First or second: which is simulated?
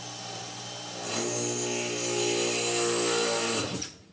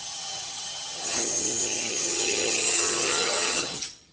second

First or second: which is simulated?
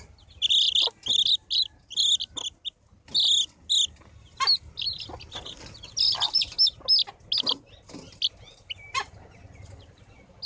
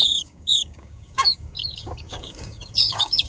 second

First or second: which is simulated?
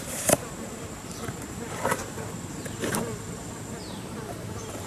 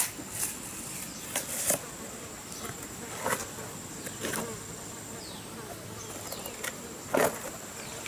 first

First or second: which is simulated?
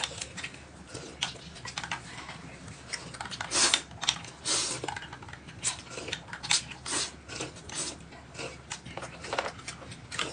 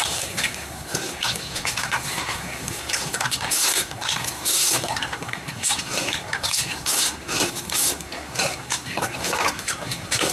second